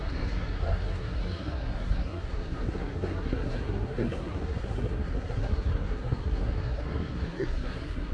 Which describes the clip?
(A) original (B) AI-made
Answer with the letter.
B